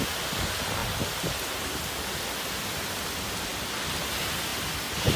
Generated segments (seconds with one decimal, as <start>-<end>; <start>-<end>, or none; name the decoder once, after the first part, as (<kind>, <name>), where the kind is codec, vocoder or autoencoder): none